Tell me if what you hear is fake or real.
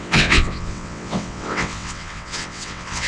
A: fake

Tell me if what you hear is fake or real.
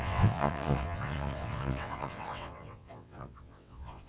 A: fake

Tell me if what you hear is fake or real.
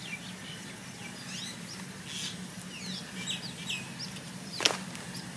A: real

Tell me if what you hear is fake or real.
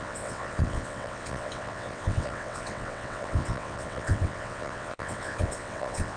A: fake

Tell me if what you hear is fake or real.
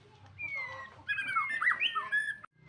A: real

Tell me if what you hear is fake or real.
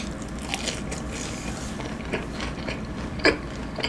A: real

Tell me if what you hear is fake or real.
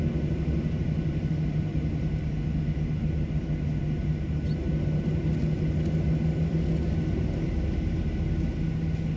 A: real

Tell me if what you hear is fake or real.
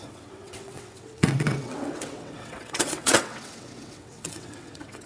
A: fake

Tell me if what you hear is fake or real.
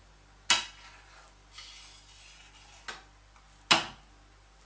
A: real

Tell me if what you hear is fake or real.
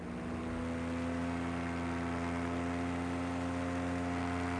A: real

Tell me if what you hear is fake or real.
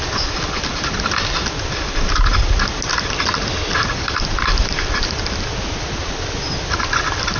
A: real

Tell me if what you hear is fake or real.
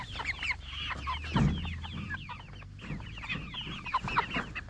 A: real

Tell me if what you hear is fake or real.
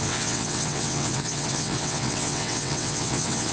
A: fake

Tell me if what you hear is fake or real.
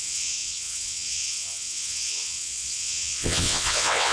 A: fake